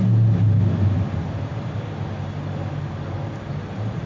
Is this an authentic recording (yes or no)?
yes